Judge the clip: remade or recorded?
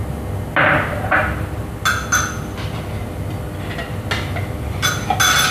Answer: recorded